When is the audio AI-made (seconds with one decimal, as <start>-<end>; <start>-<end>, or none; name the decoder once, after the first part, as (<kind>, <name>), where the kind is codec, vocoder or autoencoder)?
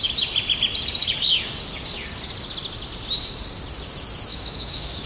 4.3-5.1 (autoencoder, DAC-VAE)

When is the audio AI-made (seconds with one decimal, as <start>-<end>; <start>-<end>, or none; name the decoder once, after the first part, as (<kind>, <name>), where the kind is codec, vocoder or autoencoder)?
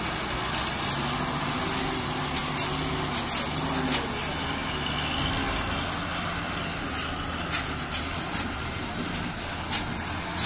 none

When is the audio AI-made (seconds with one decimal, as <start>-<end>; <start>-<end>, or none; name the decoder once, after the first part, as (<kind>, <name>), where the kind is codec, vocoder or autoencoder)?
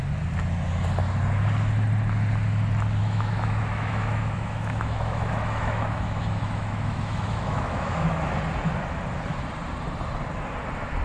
3.0-8.2 (autoencoder, DAC-VAE)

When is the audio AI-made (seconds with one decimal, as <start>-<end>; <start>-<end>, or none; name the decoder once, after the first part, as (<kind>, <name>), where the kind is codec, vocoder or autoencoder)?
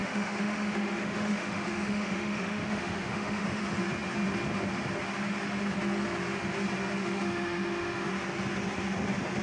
0.0-3.6 (autoencoder, DAC-VAE); 7.0-8.1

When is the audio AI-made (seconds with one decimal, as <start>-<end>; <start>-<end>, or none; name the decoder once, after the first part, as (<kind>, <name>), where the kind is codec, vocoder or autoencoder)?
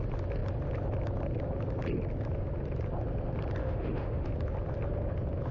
3.6-4.3 (autoencoder, DAC-VAE)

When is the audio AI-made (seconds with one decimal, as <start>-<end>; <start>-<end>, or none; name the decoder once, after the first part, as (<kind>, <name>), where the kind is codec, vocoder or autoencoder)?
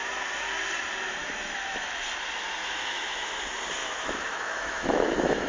1.2-1.9 (autoencoder, DAC-VAE); 2.6-3.4; 3.8-5.5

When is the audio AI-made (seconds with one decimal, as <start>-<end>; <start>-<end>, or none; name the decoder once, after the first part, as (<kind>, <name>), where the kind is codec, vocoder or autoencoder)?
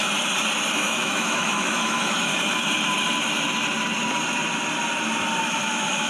0.7-2.3 (autoencoder, DAC-VAE); 5.4-6.1